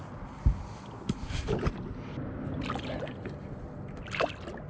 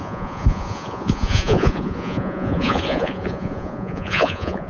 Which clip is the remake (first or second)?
second